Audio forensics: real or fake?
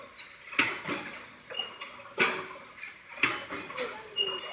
real